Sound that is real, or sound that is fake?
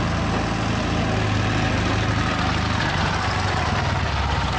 real